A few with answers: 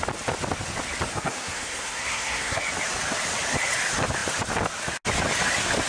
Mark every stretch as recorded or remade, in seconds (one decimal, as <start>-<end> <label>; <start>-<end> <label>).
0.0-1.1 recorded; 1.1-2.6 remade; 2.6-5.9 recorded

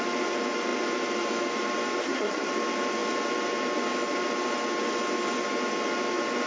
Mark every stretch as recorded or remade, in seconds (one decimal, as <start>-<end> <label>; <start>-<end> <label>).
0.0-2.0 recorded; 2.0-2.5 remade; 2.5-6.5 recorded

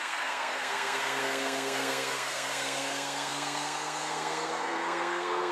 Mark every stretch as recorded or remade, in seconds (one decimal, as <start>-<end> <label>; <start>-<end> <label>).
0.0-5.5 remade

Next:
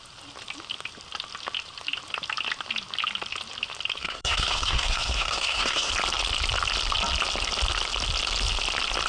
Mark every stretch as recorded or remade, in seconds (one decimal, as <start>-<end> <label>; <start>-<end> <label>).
0.0-4.0 recorded; 4.0-5.9 remade; 5.9-9.1 recorded

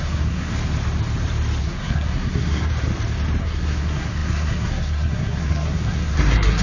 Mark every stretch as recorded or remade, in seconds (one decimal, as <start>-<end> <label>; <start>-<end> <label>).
0.0-0.5 remade; 0.5-1.6 recorded; 1.6-2.7 remade; 2.7-3.4 recorded; 3.4-6.6 remade

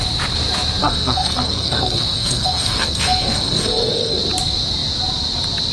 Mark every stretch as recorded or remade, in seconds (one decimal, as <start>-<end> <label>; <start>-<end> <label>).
0.0-0.8 recorded; 0.8-4.2 remade; 4.2-5.7 recorded

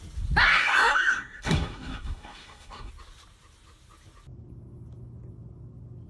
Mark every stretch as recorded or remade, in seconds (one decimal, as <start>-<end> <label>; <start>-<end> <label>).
0.0-0.4 recorded; 0.4-2.9 remade; 2.9-6.1 recorded

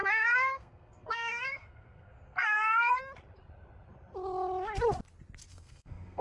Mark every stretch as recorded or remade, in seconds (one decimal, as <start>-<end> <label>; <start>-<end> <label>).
0.0-3.0 remade; 3.0-5.5 recorded; 5.5-6.2 remade